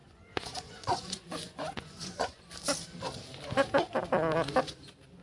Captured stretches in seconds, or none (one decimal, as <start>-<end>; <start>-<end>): 2.5-5.2